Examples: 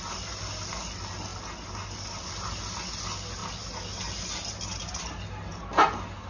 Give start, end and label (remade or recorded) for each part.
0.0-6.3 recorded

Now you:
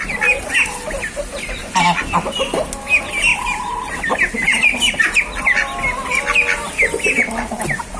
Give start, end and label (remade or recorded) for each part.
0.0-8.0 recorded

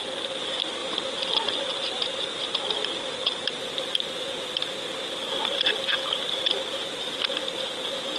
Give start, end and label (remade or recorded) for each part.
0.0-8.2 recorded

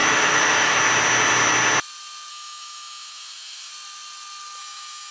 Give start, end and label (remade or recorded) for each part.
0.0-0.8 remade; 0.8-2.3 recorded; 2.3-3.7 remade; 3.7-4.6 recorded; 4.6-5.1 remade